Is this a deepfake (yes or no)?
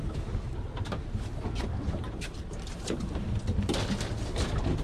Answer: no